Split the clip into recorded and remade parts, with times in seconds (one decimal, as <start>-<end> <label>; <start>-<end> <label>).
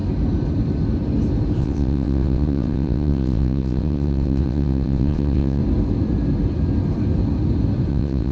0.0-1.6 recorded; 1.6-5.6 remade; 5.6-7.9 recorded; 7.9-8.3 remade